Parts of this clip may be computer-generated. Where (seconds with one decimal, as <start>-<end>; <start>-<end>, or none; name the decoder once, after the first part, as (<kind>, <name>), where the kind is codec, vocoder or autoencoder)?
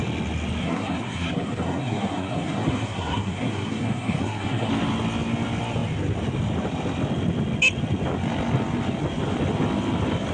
0.6-4.7 (codec, SNAC)